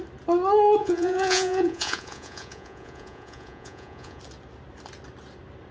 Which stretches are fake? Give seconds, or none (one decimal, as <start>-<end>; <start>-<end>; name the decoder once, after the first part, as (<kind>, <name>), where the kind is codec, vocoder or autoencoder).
0.8-4.2 (vocoder, Vocos)